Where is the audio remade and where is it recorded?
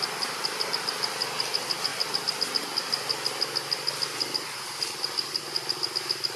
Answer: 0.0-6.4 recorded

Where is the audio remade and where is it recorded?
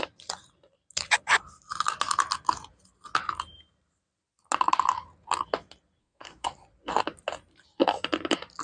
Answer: 0.0-6.0 recorded; 6.0-6.5 remade; 6.5-8.6 recorded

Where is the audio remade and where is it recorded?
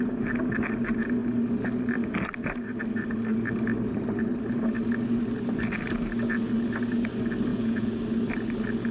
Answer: 0.0-7.5 recorded; 7.5-8.0 remade; 8.0-8.9 recorded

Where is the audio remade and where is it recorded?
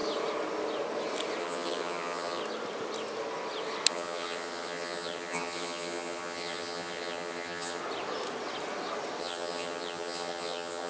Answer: 0.0-1.4 recorded; 1.4-2.4 remade; 2.4-3.9 recorded; 3.9-7.8 remade; 7.8-9.2 recorded; 9.2-10.9 remade